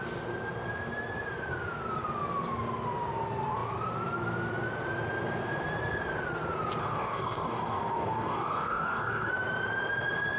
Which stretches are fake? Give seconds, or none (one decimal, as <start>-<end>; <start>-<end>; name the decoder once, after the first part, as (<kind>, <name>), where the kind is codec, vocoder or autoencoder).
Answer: 6.8-9.3 (codec, DAC)